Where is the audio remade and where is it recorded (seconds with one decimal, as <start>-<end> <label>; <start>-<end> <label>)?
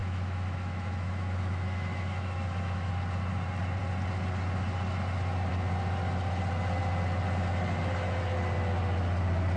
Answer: 0.0-2.9 remade; 2.9-9.6 recorded